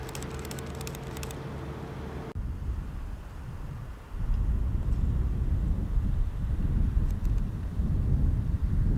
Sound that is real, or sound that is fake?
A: real